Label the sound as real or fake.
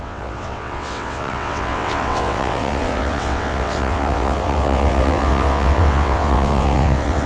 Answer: fake